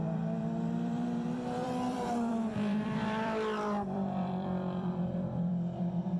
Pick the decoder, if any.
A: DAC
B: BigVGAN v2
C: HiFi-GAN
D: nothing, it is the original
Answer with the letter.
B